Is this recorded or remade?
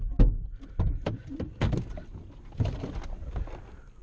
recorded